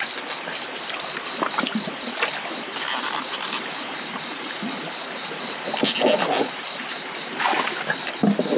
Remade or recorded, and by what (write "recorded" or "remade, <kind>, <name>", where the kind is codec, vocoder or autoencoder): remade, vocoder, BigVGAN v2